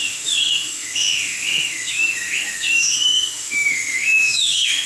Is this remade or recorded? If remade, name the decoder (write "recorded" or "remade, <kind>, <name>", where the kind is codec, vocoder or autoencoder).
remade, autoencoder, DAC-VAE